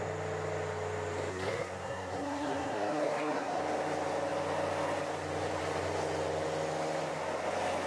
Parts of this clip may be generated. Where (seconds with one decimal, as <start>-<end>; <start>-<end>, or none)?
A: 1.3-3.6